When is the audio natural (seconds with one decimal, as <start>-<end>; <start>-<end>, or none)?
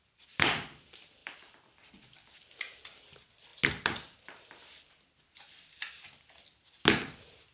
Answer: 0.0-1.2; 1.9-7.5